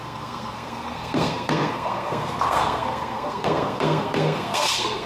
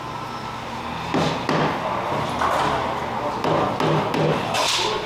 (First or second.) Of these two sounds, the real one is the second